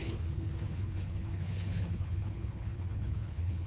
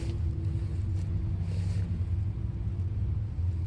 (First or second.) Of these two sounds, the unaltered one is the second